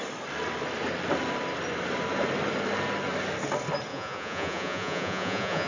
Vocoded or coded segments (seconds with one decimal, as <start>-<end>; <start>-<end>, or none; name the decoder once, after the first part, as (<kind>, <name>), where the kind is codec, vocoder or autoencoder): 3.9-5.7 (vocoder, Vocos)